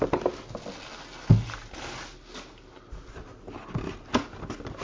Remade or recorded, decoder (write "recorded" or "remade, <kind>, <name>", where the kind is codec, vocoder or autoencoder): recorded